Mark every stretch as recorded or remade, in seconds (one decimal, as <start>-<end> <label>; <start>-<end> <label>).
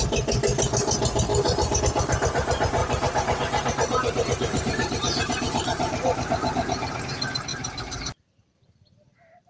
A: 0.0-1.3 recorded; 1.3-1.8 remade; 1.8-2.8 recorded; 2.8-7.0 remade; 7.0-7.5 recorded; 7.5-8.1 remade; 8.1-9.5 recorded